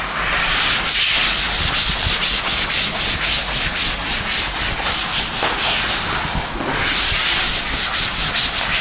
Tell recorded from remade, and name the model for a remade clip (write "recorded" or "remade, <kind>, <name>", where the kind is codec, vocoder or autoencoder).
recorded